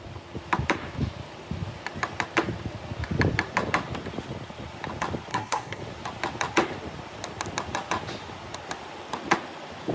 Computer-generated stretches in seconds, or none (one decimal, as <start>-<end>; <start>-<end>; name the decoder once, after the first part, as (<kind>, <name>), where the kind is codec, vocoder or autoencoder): 5.3-5.8 (codec, SNAC)